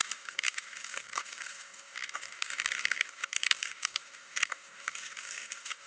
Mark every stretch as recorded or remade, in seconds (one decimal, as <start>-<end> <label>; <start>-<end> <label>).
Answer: 0.0-5.9 remade